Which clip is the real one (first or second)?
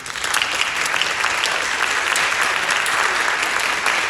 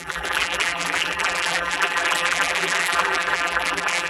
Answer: first